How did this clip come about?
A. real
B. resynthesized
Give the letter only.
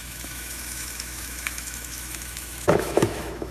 B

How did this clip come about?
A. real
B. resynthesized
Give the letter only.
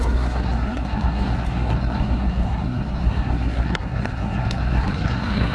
B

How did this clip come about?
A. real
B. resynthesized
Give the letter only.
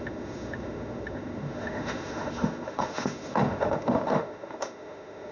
B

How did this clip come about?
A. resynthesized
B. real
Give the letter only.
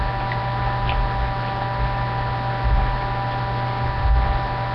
B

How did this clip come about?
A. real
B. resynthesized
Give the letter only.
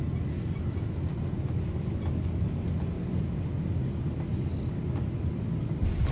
A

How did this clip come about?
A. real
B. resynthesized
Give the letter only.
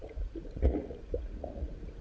B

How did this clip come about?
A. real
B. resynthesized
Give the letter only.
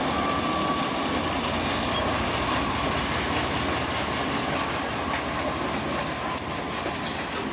A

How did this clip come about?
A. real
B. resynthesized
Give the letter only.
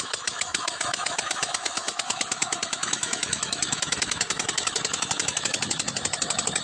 B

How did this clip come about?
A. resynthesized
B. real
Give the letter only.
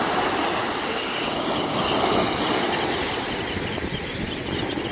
B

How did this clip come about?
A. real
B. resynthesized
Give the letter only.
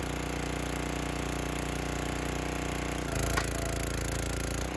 A